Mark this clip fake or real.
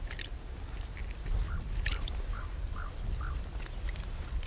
real